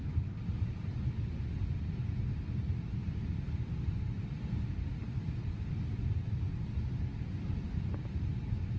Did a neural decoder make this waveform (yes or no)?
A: no